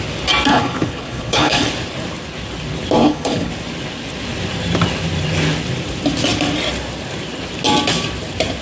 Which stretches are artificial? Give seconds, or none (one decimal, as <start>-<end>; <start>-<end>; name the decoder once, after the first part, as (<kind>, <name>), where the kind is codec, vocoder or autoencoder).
0.5-1.7 (codec, HILCodec); 3.0-3.5